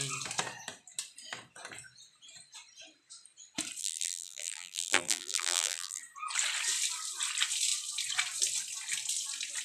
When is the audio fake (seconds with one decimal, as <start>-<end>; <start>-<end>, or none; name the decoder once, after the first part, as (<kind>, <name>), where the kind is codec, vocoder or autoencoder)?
3.8-6.0 (vocoder, BigVGAN v2)